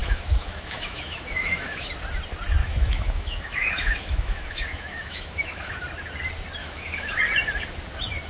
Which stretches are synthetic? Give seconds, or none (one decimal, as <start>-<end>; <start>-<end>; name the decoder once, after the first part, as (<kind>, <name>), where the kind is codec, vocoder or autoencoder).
0.0-1.9 (autoencoder, DAC-VAE); 2.6-5.7; 6.6-7.2